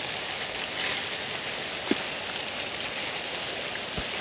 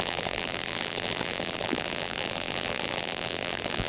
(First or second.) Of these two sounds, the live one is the first